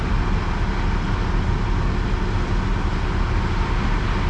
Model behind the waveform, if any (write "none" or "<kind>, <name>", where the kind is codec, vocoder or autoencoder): none